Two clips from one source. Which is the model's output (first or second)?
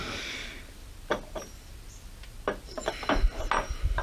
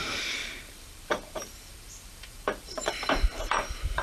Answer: second